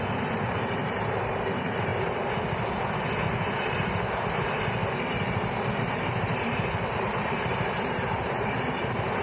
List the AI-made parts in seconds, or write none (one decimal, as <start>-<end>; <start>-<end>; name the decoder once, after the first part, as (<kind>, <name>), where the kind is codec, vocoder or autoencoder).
0.6-1.3 (vocoder, BigVGAN v2)